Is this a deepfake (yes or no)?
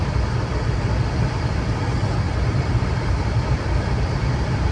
yes